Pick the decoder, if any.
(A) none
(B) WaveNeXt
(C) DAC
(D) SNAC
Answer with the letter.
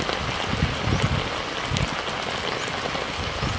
A